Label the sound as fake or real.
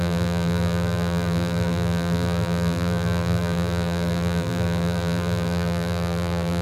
fake